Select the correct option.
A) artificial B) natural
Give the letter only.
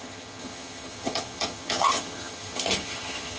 A